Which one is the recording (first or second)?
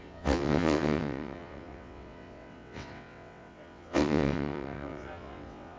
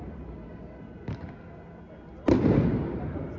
second